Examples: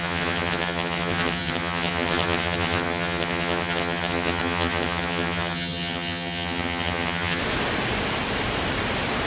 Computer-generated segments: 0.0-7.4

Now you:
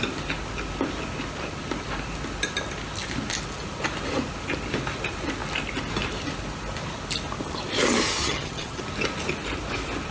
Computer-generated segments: 8.2-8.8

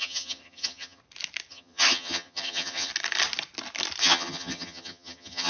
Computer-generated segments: 0.0-1.0; 1.5-2.9; 4.0-5.5

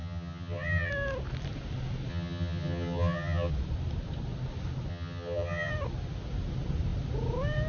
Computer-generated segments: 0.0-0.9; 2.1-3.5; 4.9-5.7

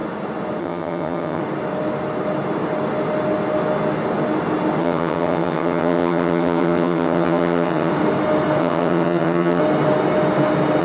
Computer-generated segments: 0.6-1.4; 4.8-7.9; 8.6-9.6

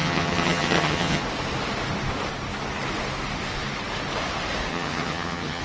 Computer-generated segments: 0.0-1.2; 4.7-5.6

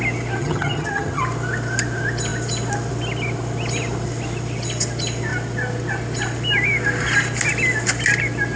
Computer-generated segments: 0.4-1.2

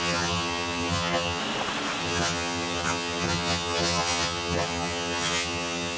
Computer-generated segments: 0.0-1.4; 2.0-6.0